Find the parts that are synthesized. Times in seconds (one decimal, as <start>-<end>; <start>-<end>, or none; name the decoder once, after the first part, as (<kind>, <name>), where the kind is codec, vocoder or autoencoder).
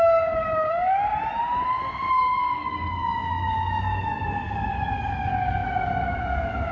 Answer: 0.0-1.1 (codec, DAC); 2.1-6.7